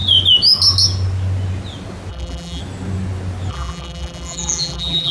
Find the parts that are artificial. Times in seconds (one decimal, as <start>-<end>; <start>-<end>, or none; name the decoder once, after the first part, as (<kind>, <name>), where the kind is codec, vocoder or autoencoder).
2.1-2.6 (vocoder, BigVGAN v2); 3.5-5.1